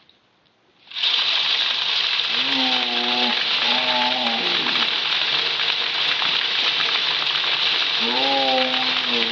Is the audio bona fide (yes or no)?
yes